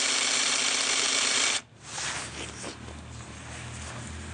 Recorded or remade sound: recorded